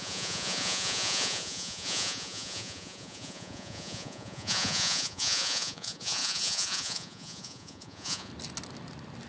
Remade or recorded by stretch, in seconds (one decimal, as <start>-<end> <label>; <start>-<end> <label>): 0.0-8.3 remade; 8.3-9.3 recorded